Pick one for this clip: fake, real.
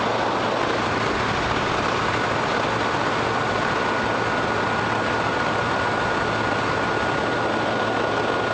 real